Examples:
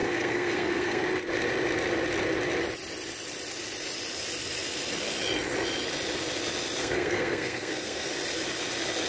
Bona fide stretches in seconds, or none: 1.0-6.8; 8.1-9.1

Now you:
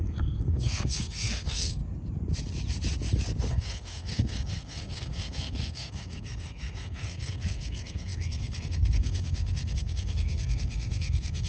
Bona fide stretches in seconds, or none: 1.8-3.5

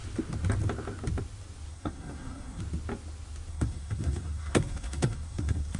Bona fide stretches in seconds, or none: 0.0-1.7; 2.6-3.5

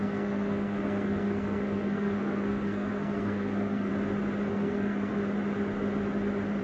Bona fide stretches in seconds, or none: 3.9-4.5; 5.1-6.6

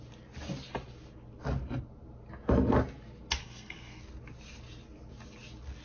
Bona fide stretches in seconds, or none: 0.0-3.4; 4.0-5.8